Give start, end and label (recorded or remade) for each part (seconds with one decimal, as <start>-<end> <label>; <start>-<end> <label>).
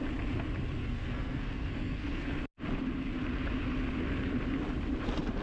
0.0-0.8 recorded; 0.8-2.4 remade; 2.4-5.4 recorded